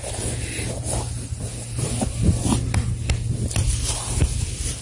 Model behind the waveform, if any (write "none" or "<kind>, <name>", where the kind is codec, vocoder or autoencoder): none